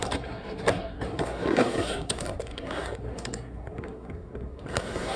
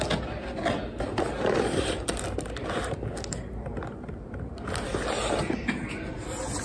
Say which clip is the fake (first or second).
first